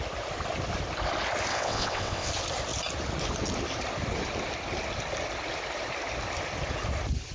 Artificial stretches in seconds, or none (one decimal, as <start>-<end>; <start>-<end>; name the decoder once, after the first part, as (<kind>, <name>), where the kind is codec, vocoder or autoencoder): 1.5-2.3 (vocoder, WaveNeXt)